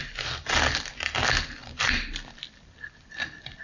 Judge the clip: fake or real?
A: real